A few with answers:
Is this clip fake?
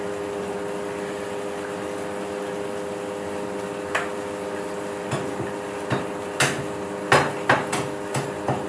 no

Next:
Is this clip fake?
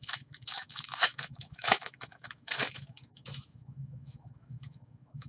yes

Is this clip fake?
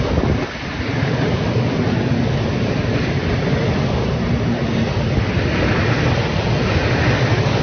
no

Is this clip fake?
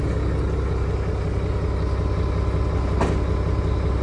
no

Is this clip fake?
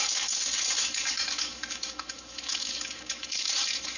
yes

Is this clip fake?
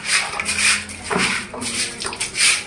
no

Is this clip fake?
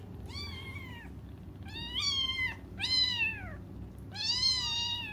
no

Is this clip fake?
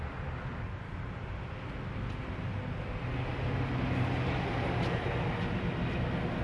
no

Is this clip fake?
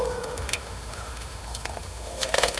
yes